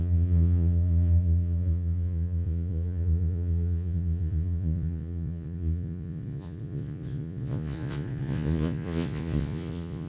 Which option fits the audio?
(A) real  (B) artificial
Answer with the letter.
B